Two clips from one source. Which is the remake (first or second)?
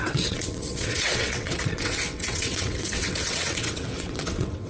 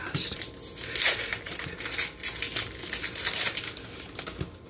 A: first